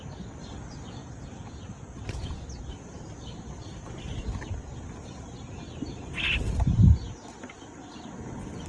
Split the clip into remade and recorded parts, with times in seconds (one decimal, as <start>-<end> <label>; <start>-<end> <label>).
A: 0.0-1.0 recorded; 1.0-2.7 remade; 2.7-8.7 recorded